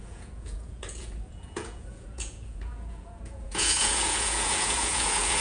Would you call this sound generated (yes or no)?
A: yes